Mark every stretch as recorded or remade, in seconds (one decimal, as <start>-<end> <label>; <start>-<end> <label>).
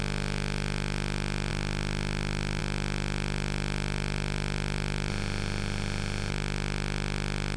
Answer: 0.0-5.1 recorded; 5.1-6.3 remade; 6.3-7.6 recorded